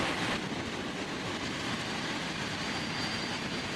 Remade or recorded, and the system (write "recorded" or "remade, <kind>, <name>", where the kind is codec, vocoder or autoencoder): recorded